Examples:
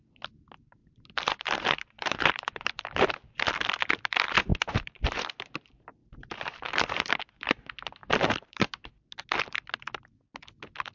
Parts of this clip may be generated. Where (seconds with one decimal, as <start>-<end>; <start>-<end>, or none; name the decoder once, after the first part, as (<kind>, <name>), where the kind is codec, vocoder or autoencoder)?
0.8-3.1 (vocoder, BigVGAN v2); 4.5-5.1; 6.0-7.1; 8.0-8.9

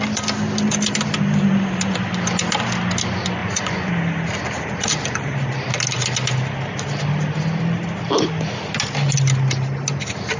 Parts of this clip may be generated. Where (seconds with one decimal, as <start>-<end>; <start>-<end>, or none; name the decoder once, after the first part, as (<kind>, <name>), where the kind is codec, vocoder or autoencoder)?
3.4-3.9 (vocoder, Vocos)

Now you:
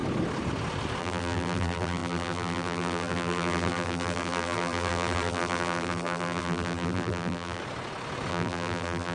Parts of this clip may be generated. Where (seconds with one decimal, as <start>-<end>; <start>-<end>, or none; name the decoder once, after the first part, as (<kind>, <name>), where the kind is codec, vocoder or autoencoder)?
1.0-7.6 (vocoder, BigVGAN v2); 8.3-9.1